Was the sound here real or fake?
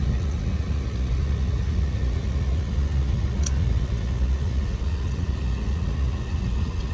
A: fake